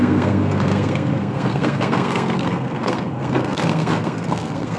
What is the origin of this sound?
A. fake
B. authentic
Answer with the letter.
A